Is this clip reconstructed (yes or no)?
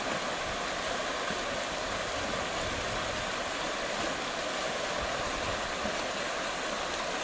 no